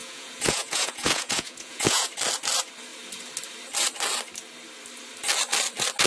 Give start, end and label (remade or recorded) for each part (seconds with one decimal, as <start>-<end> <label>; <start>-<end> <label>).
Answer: 0.0-2.1 remade; 2.1-6.1 recorded

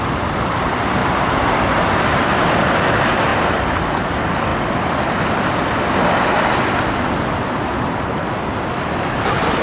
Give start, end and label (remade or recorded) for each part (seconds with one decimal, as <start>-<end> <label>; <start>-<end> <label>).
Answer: 0.0-9.6 recorded

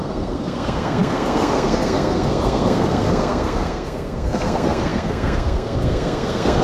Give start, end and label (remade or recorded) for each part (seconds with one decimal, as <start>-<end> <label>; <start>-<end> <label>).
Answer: 0.0-6.6 remade

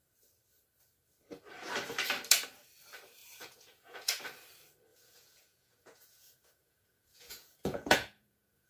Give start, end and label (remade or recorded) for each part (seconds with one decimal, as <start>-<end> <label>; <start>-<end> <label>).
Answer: 0.0-3.2 recorded; 3.2-4.2 remade; 4.2-4.9 recorded; 4.9-8.7 remade

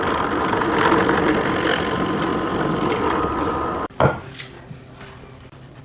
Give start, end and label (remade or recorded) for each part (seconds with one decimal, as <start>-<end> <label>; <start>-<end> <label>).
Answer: 0.0-5.8 recorded